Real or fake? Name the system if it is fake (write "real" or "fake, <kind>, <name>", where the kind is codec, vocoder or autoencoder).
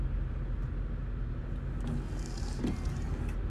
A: real